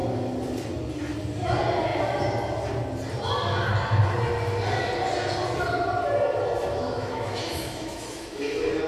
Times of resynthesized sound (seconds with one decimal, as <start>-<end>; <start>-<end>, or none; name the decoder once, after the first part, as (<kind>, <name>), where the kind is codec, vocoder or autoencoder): 6.7-8.4 (autoencoder, DAC-VAE)